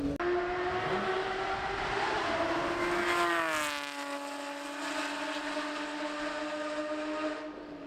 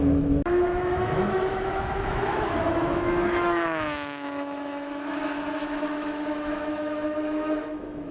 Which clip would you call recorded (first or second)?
first